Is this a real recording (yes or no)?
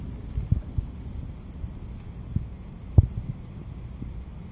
yes